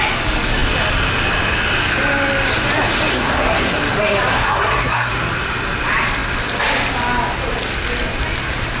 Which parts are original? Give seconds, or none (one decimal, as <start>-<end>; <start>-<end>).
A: 0.0-3.1; 3.8-4.3; 5.1-8.8